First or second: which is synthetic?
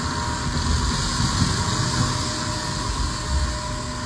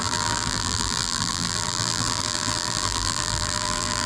second